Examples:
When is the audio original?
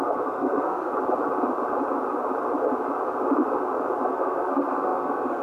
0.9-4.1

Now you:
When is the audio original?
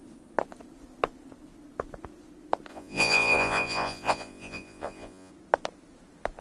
0.0-2.7; 5.3-6.4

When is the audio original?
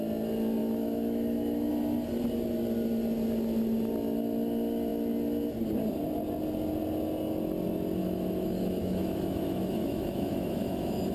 0.0-0.6; 1.7-8.0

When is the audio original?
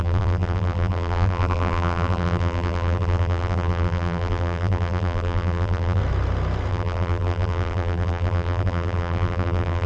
6.0-6.7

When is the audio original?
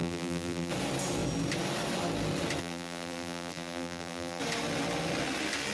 0.7-2.6; 4.4-5.7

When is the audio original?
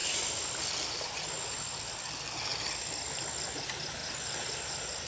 1.9-2.5; 3.6-4.0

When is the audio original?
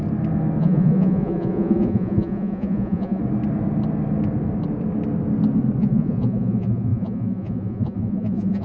0.0-0.6; 3.2-5.8